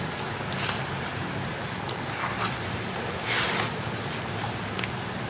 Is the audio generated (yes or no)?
no